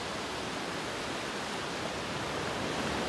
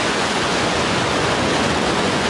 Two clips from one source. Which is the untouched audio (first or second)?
first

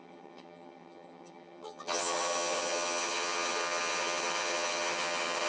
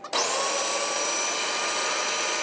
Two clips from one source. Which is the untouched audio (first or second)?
second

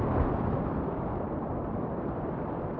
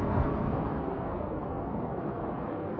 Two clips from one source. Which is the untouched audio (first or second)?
first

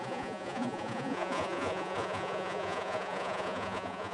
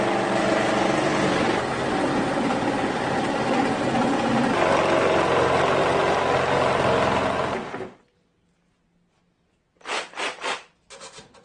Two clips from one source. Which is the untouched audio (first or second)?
second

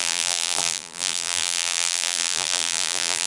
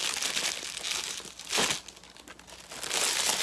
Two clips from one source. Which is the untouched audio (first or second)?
second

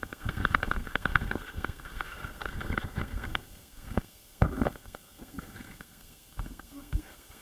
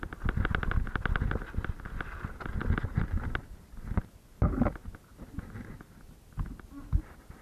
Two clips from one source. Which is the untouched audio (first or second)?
second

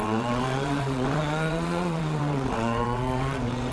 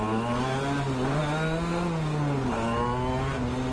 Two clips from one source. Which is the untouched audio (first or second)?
second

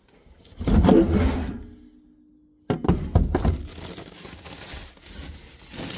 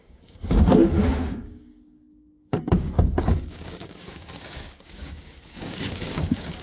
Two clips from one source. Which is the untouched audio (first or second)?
first